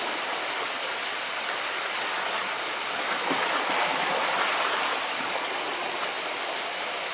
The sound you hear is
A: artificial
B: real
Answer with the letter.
B